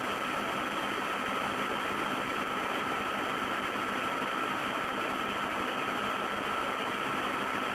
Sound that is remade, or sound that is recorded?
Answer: recorded